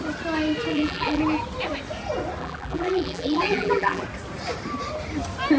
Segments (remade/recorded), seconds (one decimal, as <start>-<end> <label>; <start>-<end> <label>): 0.0-0.7 recorded; 0.7-1.2 remade; 1.2-2.4 recorded; 2.4-4.0 remade; 4.0-5.6 recorded